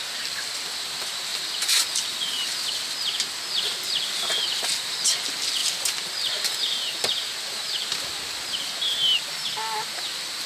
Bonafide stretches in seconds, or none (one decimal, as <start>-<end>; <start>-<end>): 0.0-10.5